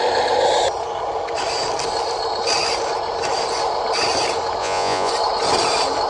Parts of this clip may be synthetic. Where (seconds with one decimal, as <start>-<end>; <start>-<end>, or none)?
4.6-5.1